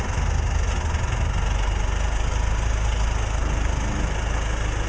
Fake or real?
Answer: real